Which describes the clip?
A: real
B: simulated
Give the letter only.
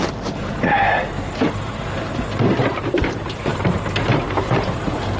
B